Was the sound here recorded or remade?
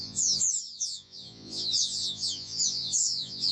remade